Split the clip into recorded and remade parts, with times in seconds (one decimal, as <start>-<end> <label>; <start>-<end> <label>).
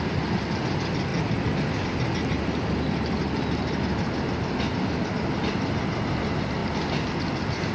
0.0-7.7 recorded